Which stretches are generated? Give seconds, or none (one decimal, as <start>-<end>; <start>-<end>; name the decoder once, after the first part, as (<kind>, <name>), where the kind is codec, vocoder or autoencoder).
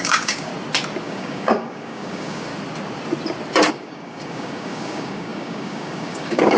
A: 0.0-0.5 (codec, DAC); 1.0-2.5; 3.7-6.6